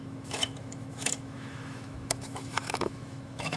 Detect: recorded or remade remade